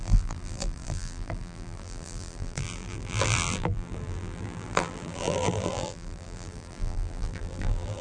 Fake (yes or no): yes